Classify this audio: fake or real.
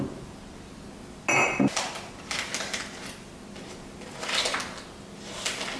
real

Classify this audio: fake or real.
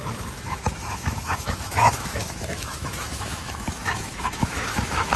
fake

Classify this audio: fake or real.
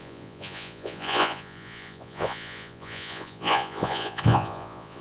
fake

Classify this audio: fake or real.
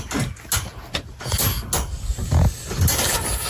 real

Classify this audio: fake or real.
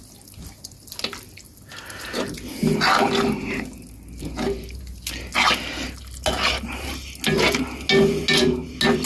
real